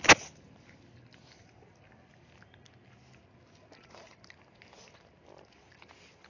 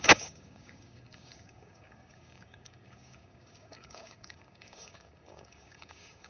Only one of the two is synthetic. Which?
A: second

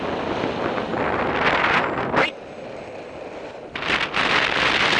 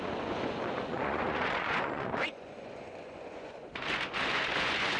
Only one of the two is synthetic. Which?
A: second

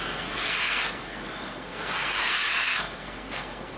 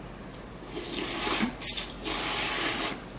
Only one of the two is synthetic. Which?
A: first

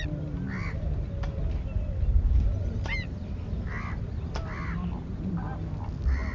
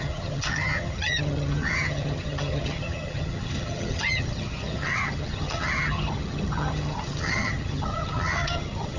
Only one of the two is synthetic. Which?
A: second